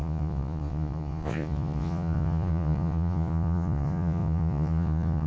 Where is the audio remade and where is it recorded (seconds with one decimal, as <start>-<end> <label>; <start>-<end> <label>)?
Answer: 0.0-5.3 remade